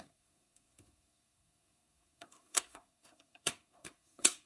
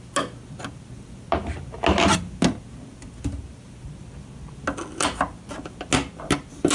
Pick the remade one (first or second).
first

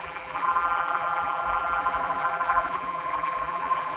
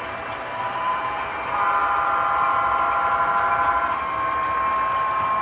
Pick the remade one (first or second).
first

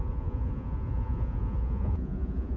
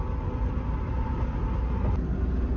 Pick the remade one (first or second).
first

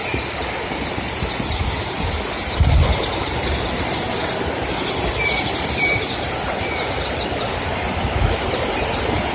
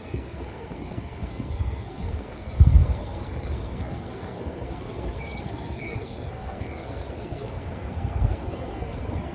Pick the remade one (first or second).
second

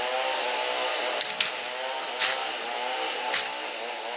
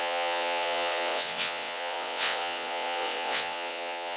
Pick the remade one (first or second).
second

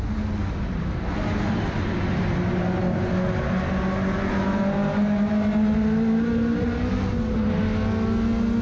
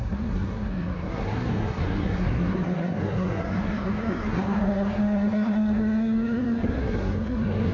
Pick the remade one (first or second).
second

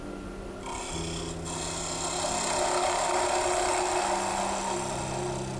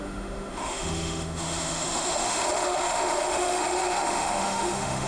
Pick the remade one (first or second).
second